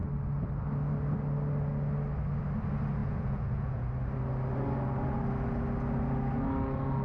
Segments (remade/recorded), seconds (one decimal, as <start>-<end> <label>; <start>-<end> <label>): 0.0-3.0 recorded; 3.0-3.9 remade; 3.9-7.0 recorded